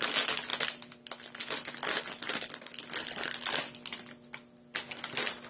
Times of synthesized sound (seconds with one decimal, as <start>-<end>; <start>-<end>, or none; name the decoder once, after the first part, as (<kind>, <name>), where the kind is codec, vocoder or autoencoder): none